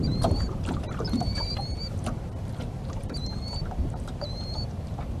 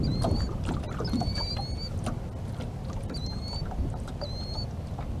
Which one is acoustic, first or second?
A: second